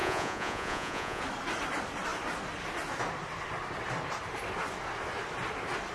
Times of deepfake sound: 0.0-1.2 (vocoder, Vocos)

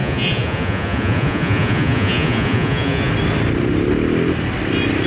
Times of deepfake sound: 0.0-3.1 (vocoder, Vocos)

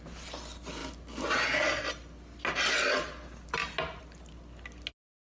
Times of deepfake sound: none

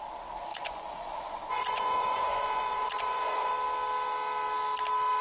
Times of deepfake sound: 0.5-3.5 (vocoder, Vocos)

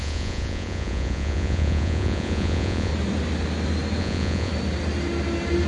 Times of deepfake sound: 0.0-2.9 (vocoder, Vocos); 4.0-4.5

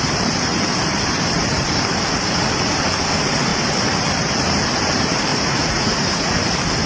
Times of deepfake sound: 5.3-6.4 (vocoder, Vocos)

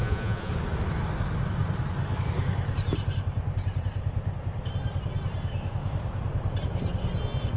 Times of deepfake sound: 0.0-0.5 (vocoder, Vocos)

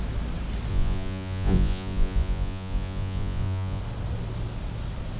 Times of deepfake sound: 0.7-3.8 (vocoder, Vocos)